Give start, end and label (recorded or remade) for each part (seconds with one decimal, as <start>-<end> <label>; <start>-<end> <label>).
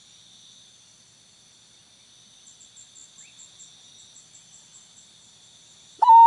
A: 0.0-6.3 recorded